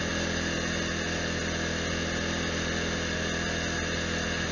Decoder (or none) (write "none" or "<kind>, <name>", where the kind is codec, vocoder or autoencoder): none